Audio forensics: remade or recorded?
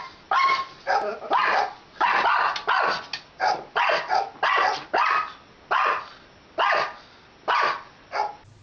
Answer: recorded